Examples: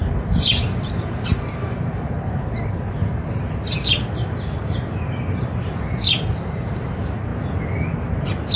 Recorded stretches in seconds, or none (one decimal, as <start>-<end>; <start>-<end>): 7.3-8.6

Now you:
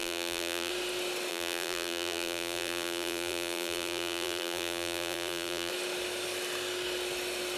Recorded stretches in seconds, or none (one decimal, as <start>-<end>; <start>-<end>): 0.7-1.3; 5.7-7.6

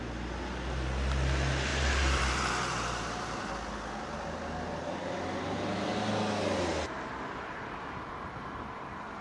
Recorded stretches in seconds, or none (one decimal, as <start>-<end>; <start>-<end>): 0.0-1.7; 3.5-9.2

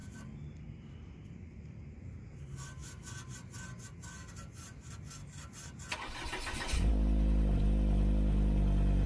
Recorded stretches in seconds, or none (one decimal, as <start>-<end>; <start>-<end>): 2.4-9.1

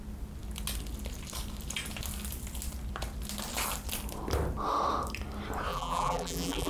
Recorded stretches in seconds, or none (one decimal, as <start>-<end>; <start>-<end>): 0.0-5.7

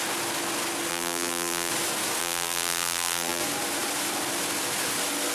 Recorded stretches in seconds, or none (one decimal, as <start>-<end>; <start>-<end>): 0.0-0.9; 1.7-2.2; 3.4-5.3